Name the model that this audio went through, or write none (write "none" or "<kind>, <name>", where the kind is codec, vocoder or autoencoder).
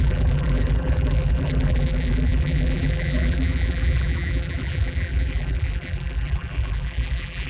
vocoder, BigVGAN v2